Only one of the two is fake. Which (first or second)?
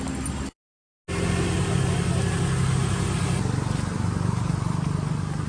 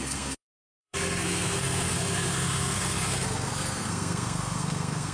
second